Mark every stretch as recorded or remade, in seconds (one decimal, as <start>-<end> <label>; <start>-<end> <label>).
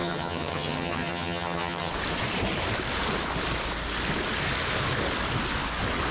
0.0-1.9 remade; 1.9-6.1 recorded